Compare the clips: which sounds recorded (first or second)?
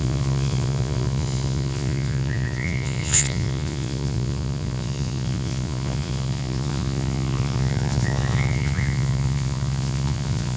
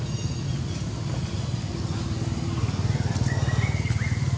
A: second